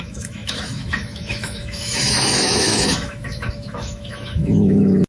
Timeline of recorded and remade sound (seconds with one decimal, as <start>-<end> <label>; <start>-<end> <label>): 0.0-5.1 remade